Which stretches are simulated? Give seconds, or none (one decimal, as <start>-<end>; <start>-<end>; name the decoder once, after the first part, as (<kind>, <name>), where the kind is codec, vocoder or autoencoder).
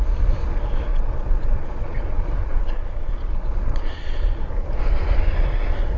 0.9-4.5 (vocoder, Vocos)